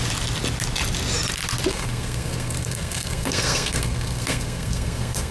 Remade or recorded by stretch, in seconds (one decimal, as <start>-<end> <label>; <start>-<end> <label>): 0.0-1.7 recorded; 1.7-5.3 remade